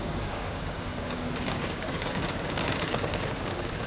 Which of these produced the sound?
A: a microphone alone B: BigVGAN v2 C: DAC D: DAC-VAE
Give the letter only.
C